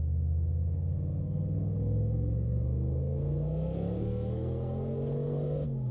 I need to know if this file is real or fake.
fake